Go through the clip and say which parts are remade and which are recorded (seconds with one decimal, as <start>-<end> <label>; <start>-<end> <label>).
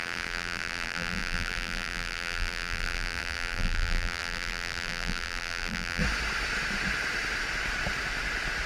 0.0-6.0 remade; 6.0-8.7 recorded